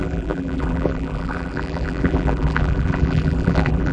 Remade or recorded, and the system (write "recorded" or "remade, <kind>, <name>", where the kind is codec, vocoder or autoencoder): remade, vocoder, BigVGAN v2